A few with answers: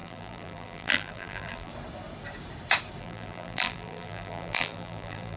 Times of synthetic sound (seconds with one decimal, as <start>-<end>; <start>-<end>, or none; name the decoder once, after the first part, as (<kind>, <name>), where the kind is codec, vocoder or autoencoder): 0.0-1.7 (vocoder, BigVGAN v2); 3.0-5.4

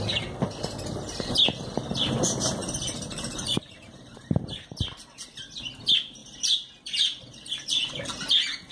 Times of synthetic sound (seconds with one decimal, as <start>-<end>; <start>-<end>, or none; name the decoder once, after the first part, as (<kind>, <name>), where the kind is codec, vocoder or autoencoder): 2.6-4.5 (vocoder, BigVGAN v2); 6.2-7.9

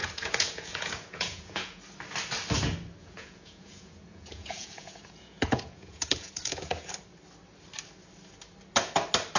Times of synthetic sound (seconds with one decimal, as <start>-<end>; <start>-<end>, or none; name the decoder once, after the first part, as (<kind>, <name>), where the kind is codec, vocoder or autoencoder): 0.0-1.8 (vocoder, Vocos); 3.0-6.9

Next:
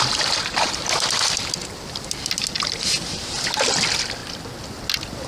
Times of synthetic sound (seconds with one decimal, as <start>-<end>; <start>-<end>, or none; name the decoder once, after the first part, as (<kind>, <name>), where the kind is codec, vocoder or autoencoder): none

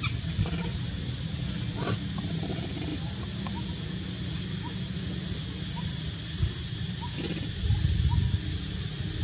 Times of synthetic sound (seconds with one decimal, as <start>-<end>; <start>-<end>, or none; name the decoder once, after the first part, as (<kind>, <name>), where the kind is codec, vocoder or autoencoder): none

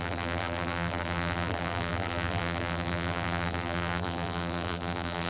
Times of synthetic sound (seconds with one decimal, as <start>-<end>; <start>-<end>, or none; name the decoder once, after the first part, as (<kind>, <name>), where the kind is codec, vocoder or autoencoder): 0.0-5.3 (vocoder, BigVGAN v2)

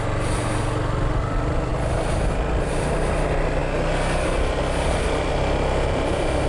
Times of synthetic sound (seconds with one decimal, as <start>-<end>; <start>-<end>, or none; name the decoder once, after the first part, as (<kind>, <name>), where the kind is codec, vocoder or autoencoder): none